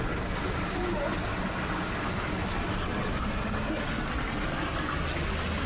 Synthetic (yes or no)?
no